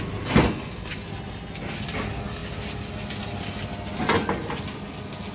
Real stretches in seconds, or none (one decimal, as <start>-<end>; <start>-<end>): 0.0-5.3